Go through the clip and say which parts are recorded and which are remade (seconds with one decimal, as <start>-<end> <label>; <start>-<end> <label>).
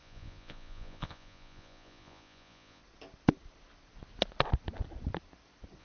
0.0-2.8 remade; 2.8-5.8 recorded